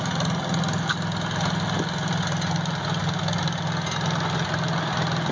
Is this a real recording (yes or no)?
yes